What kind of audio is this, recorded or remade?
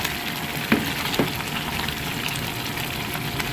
recorded